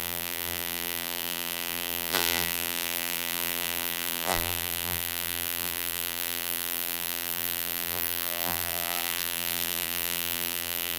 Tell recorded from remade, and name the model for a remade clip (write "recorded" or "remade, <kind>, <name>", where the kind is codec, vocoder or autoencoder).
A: remade, vocoder, BigVGAN v2